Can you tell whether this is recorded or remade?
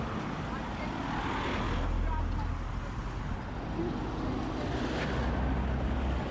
recorded